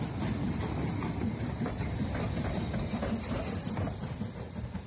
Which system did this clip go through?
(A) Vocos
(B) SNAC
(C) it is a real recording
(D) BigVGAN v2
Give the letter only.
D